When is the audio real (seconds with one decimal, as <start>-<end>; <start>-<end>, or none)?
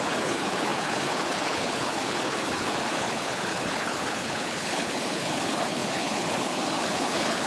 none